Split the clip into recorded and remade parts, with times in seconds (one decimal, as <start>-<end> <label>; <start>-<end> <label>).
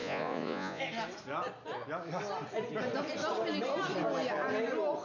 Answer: 0.0-0.8 remade; 0.8-5.0 recorded